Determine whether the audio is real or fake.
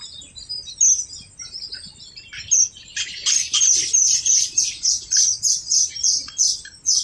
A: real